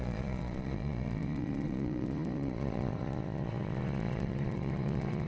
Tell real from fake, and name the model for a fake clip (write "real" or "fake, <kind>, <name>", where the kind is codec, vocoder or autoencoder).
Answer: fake, vocoder, Vocos